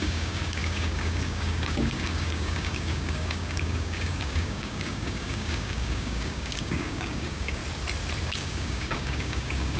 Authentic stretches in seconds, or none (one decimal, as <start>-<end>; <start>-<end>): 7.6-8.2